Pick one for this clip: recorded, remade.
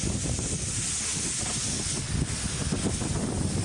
recorded